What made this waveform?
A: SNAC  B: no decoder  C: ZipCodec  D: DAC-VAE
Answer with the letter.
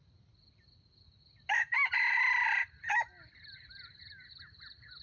B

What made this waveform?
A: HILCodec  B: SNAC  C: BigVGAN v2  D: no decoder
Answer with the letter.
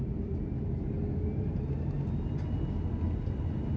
D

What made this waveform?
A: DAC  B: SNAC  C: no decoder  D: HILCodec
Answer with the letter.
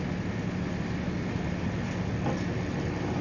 C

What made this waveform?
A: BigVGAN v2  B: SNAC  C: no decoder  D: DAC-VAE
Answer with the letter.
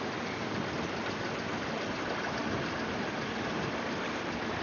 C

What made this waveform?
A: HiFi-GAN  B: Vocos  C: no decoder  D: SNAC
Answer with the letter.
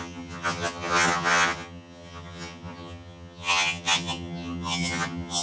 A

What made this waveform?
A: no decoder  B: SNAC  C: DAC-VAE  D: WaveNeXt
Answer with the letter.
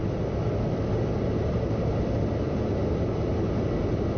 A